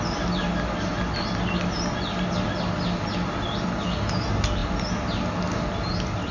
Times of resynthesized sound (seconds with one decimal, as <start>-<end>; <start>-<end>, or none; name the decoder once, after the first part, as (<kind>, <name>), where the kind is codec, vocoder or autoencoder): none